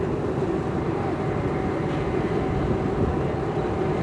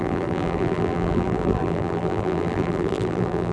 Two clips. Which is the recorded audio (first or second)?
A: first